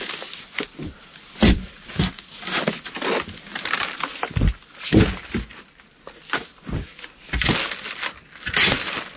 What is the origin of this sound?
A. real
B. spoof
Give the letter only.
A